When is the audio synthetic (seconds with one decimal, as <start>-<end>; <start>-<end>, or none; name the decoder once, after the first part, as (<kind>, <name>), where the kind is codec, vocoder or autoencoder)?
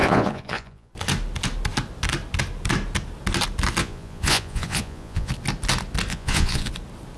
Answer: 0.0-0.9 (vocoder, Vocos); 3.8-5.3; 6.1-6.7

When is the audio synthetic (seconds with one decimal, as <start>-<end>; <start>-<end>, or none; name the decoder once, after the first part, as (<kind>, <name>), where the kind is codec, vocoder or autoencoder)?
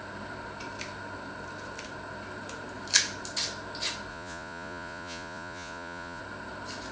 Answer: 4.1-6.2 (vocoder, Vocos)